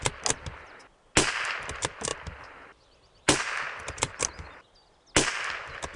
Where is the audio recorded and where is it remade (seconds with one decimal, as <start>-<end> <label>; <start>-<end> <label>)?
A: 0.0-2.1 recorded; 2.1-4.2 remade; 4.2-6.0 recorded